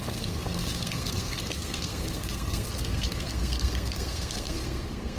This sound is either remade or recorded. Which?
remade